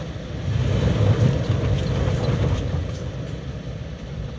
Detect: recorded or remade recorded